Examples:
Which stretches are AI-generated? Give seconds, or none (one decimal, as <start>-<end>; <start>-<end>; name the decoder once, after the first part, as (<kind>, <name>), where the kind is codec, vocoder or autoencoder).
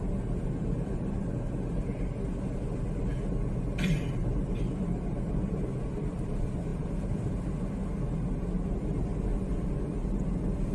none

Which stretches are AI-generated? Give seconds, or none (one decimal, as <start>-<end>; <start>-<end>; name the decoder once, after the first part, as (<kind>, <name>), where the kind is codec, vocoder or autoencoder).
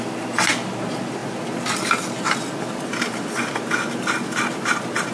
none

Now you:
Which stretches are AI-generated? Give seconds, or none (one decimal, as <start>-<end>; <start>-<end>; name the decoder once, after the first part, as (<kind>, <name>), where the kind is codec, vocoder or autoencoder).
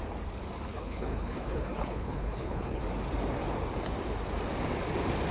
0.7-2.8 (codec, HILCodec)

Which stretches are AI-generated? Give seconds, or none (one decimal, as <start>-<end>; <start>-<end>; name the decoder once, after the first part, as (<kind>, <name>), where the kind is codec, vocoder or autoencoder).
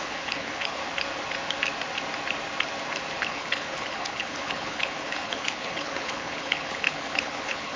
0.0-0.8 (codec, HILCodec); 3.3-7.8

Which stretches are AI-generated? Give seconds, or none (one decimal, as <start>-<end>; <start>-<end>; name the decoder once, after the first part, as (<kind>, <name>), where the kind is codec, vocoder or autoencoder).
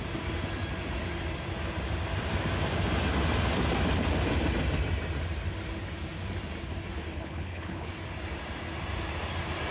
7.1-7.9 (codec, HILCodec)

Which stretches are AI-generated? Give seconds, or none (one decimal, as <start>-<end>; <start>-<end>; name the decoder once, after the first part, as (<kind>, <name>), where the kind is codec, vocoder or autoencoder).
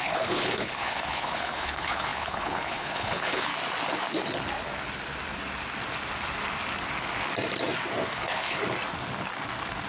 0.0-3.5 (codec, HILCodec); 8.1-8.6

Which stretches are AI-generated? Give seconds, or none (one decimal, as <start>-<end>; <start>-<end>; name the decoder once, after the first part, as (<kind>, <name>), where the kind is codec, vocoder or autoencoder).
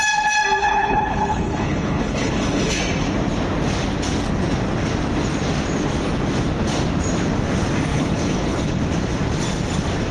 0.6-2.8 (codec, HILCodec); 7.9-8.8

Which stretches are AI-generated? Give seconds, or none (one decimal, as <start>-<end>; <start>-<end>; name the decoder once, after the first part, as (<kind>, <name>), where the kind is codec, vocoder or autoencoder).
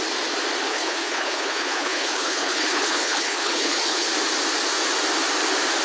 0.7-4.1 (codec, HILCodec)